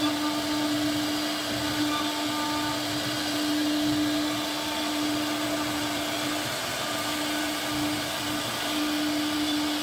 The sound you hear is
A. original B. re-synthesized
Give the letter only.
A